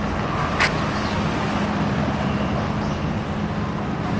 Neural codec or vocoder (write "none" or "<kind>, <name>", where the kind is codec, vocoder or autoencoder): none